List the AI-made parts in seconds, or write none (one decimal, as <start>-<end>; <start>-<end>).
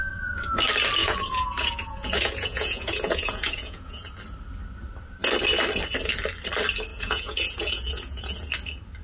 1.0-4.1; 6.9-8.5